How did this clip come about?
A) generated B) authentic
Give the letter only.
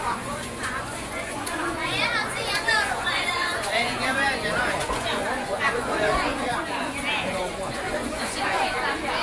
A